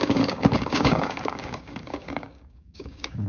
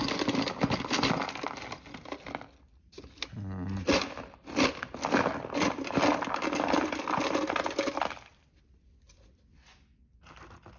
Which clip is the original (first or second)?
second